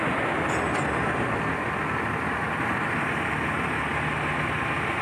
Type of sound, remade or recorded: recorded